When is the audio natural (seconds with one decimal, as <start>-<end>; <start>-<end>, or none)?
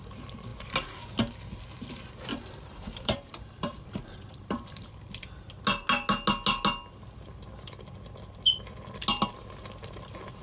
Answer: 0.0-2.3; 4.9-10.4